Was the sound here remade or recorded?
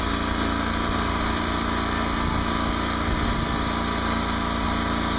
recorded